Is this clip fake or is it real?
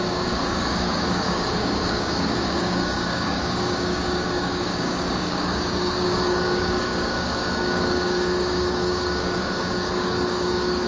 fake